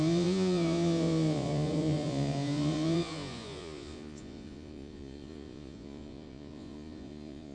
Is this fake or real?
fake